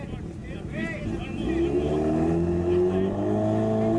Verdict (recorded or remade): recorded